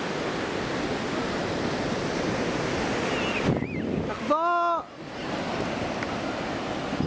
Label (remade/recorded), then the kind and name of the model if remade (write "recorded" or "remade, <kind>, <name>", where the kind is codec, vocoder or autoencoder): recorded